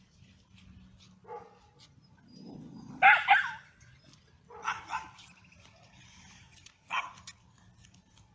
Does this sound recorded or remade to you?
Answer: recorded